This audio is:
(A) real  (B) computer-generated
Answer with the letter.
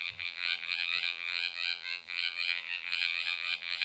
B